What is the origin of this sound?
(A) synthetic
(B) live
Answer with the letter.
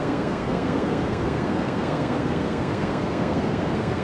A